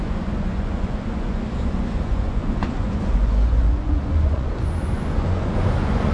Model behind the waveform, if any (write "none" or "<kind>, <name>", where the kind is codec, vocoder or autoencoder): vocoder, Vocos